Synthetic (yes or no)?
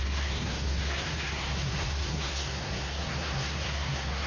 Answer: yes